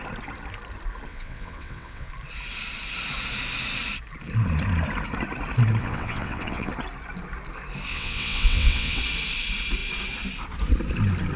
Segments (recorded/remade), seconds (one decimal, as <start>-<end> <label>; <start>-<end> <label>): 0.0-1.1 recorded; 1.1-2.1 remade; 2.1-5.8 recorded; 5.8-6.7 remade; 6.7-7.9 recorded; 7.9-9.0 remade; 9.0-11.4 recorded